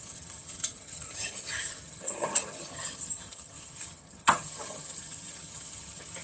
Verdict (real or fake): fake